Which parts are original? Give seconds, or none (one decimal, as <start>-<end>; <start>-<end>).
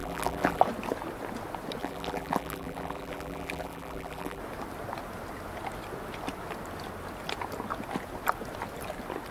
0.6-1.8; 4.4-9.3